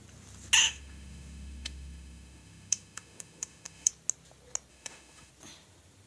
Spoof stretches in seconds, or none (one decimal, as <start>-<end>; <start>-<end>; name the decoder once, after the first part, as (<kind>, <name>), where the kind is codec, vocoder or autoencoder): 0.6-3.9 (autoencoder, DAC-VAE); 4.7-5.3